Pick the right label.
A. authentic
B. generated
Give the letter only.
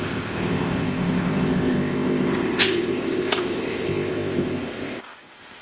B